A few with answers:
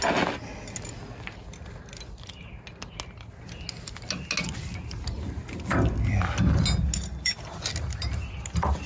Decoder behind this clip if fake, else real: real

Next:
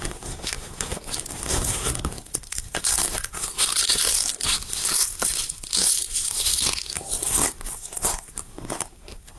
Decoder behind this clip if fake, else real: fake, codec, SNAC